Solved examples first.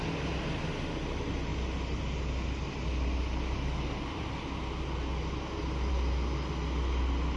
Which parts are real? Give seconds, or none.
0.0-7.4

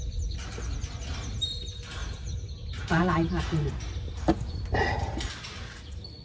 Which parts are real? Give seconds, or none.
0.0-2.0; 3.7-6.2

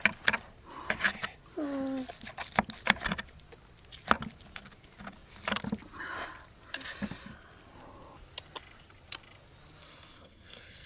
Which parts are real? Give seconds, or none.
0.0-9.8